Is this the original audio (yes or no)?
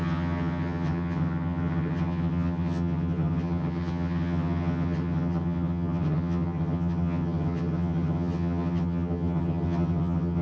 no